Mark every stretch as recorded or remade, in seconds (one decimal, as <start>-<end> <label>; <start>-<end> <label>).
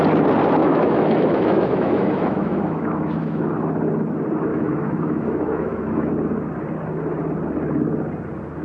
0.0-0.6 recorded; 0.6-3.4 remade; 3.4-4.5 recorded; 4.5-6.1 remade; 6.1-8.6 recorded